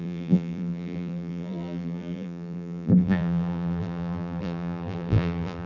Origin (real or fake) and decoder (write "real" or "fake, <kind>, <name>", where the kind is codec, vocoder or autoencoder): fake, vocoder, BigVGAN v2